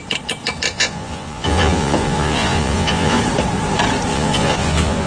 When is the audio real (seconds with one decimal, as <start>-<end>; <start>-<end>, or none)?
0.0-0.7; 3.2-4.1